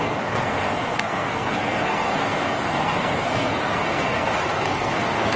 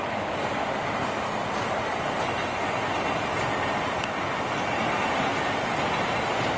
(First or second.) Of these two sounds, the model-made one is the first